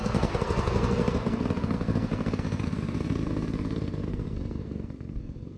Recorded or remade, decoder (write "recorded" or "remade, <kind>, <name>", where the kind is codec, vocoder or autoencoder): remade, codec, SNAC